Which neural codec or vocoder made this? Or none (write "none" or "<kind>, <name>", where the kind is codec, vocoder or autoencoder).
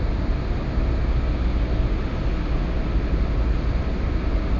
none